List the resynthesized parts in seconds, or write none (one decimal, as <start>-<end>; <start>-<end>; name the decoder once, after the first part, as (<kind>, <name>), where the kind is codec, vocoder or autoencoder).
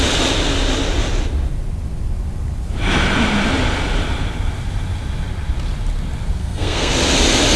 6.4-6.9 (codec, SNAC)